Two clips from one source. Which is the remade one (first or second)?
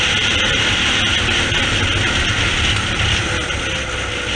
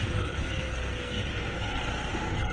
second